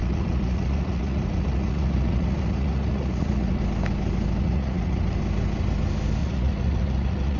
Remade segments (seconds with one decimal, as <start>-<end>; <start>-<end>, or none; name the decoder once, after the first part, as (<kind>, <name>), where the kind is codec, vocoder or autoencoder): 0.0-3.6 (vocoder, Vocos); 4.4-5.0; 6.2-7.4

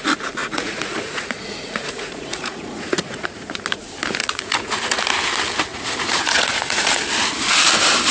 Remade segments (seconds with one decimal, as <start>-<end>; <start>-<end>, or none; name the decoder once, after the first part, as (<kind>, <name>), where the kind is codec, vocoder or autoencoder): 0.4-3.4 (vocoder, Vocos); 4.2-5.0; 5.7-6.9

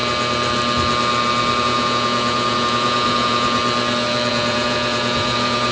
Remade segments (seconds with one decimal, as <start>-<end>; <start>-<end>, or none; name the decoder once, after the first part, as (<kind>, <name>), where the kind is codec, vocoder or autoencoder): 1.6-3.6 (vocoder, Vocos); 4.3-5.7

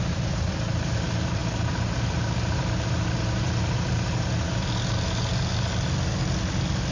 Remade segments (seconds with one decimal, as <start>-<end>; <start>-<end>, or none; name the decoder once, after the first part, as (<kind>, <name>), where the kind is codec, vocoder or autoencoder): none